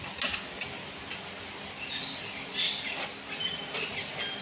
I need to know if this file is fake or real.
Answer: real